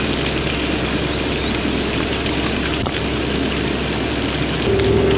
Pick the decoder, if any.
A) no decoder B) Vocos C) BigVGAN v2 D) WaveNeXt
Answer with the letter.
A